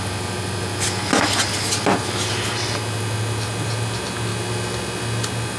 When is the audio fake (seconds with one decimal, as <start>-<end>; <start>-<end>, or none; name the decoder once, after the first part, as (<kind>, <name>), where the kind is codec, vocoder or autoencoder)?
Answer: none